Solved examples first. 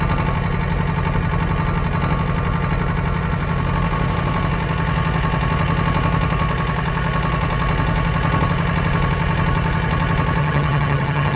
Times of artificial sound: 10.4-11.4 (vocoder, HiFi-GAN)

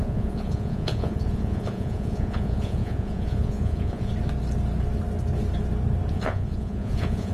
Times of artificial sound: 0.0-4.1 (vocoder, Vocos); 6.1-7.3

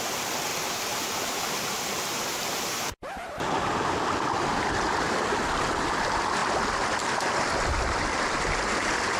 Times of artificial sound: 0.5-3.3 (vocoder, BigVGAN v2)

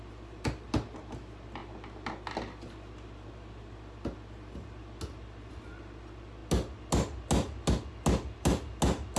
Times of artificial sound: none

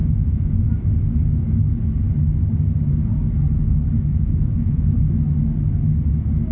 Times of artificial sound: 0.0-0.7 (vocoder, Vocos); 4.1-5.1

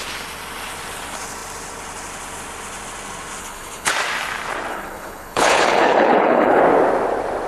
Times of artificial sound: 3.4-3.9 (codec, HILCodec); 4.7-6.6

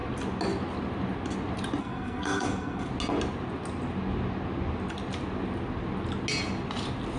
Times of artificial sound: 1.8-2.9 (codec, SNAC)